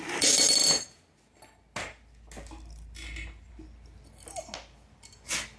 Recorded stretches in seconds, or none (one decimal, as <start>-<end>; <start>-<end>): 0.0-5.6